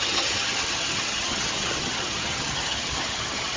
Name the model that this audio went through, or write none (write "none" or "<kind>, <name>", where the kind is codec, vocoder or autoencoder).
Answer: vocoder, HiFi-GAN